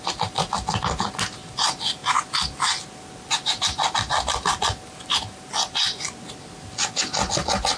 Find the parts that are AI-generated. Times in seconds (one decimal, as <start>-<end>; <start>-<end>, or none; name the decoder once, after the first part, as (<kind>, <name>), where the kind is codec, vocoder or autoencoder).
none